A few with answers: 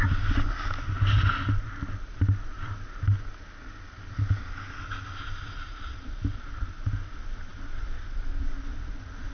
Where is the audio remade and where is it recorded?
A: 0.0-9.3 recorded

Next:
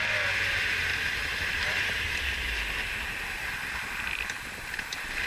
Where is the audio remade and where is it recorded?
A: 0.0-5.3 recorded